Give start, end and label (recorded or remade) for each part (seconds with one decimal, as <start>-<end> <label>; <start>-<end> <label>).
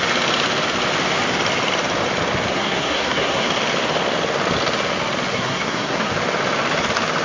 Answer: 0.0-2.5 recorded; 2.5-3.5 remade; 3.5-5.3 recorded; 5.3-6.1 remade; 6.1-7.2 recorded